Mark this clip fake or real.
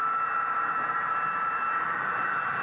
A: fake